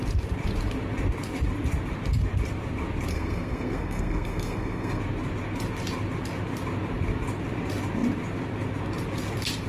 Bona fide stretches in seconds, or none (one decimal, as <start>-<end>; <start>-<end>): 0.0-3.1; 5.0-9.7